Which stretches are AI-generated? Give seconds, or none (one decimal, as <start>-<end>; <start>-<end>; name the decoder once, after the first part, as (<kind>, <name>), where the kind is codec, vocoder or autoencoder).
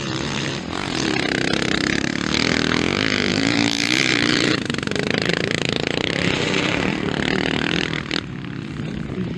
0.0-2.1 (vocoder, BigVGAN v2); 3.3-9.4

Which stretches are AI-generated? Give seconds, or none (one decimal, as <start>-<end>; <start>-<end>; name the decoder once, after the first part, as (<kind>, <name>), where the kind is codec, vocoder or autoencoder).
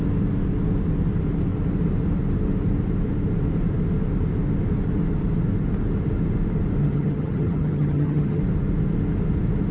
6.8-8.4 (vocoder, HiFi-GAN)